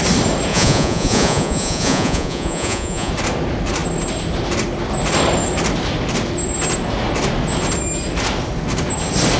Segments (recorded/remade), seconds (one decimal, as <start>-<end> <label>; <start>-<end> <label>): 0.0-0.5 recorded; 0.5-3.1 remade; 3.1-9.4 recorded